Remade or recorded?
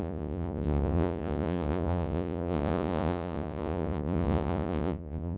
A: remade